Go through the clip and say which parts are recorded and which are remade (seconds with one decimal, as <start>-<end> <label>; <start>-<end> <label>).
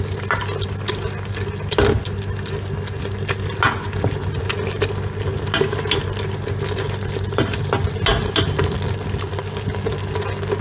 0.0-10.6 recorded